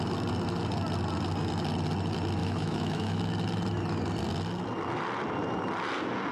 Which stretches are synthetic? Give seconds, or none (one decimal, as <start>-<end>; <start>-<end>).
2.4-3.2